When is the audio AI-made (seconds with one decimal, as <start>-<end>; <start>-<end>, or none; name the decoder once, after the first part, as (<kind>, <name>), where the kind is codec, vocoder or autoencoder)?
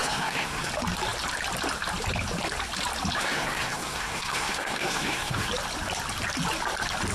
0.0-0.7 (codec, SNAC); 3.2-5.5